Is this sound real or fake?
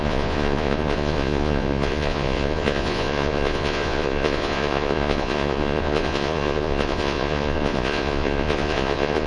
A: fake